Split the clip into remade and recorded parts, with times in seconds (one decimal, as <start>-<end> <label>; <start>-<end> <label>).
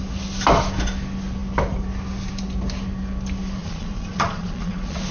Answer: 0.0-3.6 recorded; 3.6-5.1 remade